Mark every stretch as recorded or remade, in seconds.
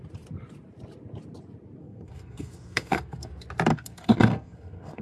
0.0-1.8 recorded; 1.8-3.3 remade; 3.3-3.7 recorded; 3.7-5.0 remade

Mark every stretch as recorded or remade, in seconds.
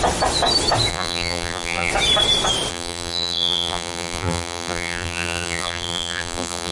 0.0-0.9 recorded; 0.9-1.9 remade; 1.9-2.7 recorded; 2.7-6.7 remade